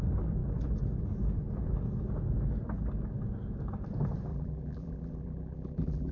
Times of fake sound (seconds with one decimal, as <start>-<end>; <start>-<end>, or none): 4.3-6.1